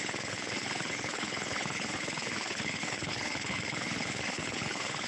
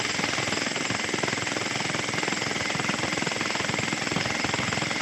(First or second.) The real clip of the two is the second